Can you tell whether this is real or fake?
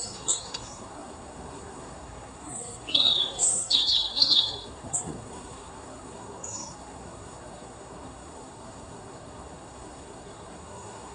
fake